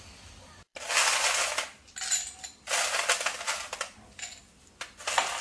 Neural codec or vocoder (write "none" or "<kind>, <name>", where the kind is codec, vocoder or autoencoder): none